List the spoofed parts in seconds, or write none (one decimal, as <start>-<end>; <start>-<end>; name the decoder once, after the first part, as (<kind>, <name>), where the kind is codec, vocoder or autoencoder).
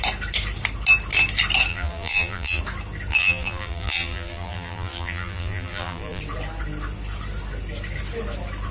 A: 1.7-2.6 (vocoder, BigVGAN v2); 3.1-6.2